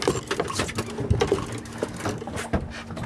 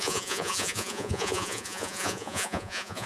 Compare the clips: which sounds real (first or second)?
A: first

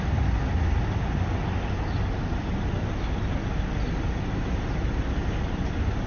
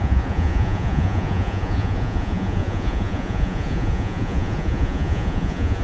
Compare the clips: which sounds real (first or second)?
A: first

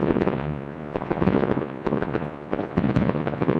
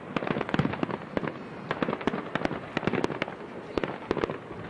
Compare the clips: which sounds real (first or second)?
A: second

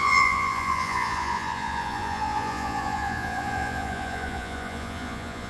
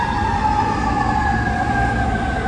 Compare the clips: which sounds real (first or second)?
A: second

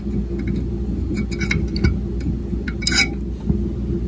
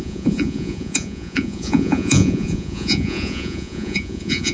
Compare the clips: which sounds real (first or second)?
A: first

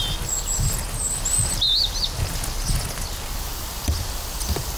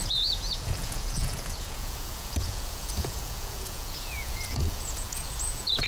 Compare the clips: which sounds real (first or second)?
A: first